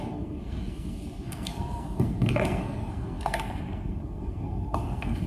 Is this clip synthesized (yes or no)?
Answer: yes